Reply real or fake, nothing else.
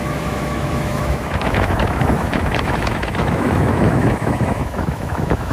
fake